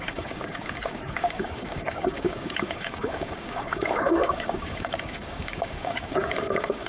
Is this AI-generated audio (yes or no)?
yes